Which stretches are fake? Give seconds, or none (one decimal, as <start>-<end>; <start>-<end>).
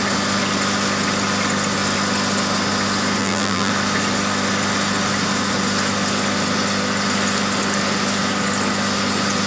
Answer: 3.2-3.7